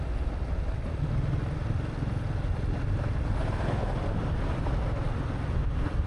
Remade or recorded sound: recorded